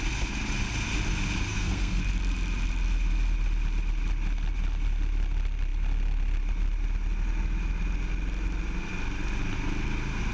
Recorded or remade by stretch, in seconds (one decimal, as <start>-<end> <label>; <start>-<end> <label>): 0.0-1.5 recorded; 1.5-2.0 remade; 2.0-10.3 recorded